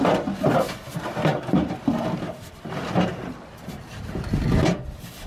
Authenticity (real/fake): real